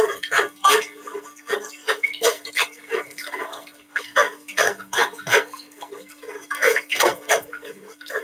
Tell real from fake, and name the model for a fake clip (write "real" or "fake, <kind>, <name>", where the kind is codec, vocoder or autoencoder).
fake, codec, SNAC